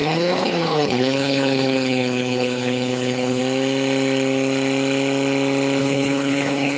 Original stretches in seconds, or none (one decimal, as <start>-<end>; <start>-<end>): 3.4-5.8